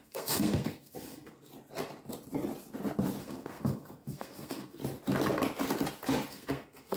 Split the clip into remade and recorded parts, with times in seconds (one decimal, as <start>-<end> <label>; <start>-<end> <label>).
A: 0.0-1.5 remade; 1.5-3.2 recorded; 3.2-4.8 remade; 4.8-6.3 recorded; 6.3-7.0 remade